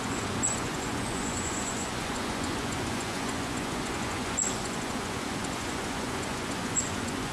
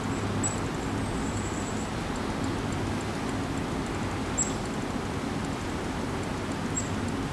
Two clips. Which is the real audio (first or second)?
second